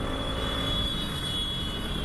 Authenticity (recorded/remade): remade